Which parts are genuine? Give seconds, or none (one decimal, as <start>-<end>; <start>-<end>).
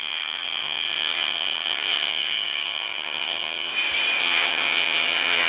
3.7-4.2